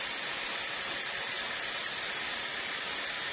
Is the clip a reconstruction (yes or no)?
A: no